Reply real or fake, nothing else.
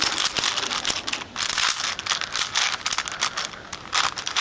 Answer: real